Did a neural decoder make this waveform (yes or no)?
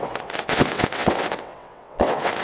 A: yes